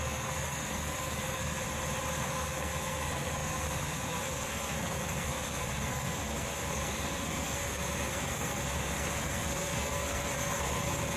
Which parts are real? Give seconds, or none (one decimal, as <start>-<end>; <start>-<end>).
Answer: 1.6-2.3